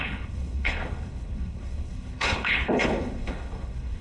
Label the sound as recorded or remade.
remade